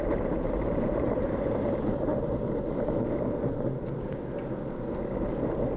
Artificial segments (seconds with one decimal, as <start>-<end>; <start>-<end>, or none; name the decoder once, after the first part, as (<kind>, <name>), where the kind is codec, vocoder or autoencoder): 0.0-2.1 (vocoder, BigVGAN v2)